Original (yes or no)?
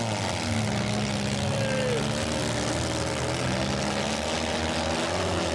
yes